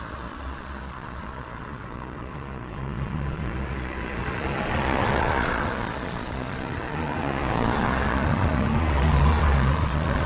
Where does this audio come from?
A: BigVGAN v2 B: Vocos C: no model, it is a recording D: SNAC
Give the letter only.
B